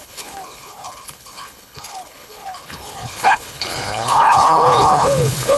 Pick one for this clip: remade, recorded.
remade